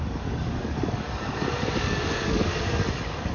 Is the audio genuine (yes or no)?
no